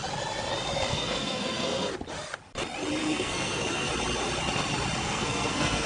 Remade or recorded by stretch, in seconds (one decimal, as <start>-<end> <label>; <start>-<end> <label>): 0.0-0.9 recorded; 0.9-1.9 remade; 1.9-3.0 recorded; 3.0-3.9 remade; 3.9-5.0 recorded; 5.0-5.9 remade